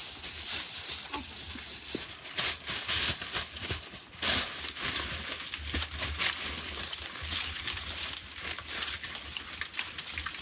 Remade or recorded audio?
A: recorded